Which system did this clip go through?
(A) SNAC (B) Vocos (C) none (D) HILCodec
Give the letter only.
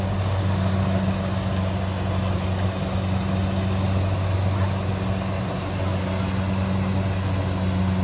C